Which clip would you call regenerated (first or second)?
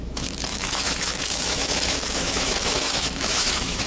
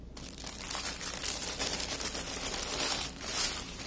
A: first